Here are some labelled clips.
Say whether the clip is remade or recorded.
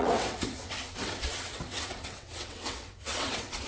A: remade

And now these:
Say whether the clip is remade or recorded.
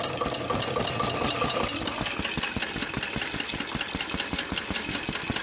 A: recorded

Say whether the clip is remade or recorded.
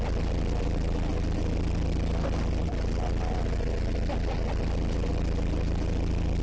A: recorded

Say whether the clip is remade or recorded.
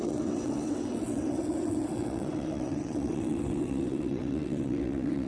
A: remade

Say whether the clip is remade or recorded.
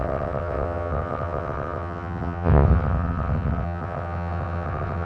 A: remade